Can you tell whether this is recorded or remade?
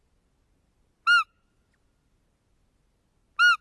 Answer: recorded